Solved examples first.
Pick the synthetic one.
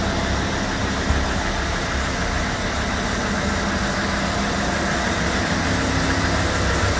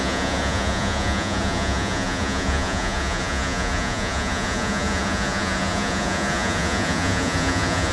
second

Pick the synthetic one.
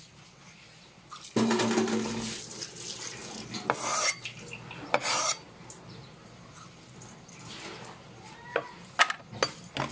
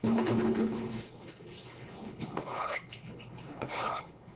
second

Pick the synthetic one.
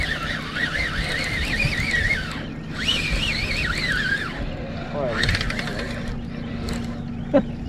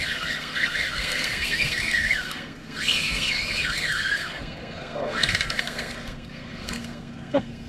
second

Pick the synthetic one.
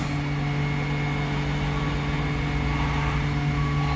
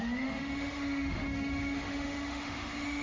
second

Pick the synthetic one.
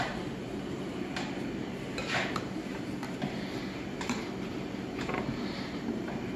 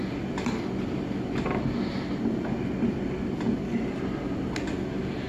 first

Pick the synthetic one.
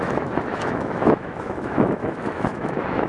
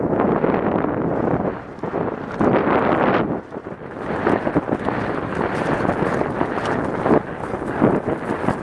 first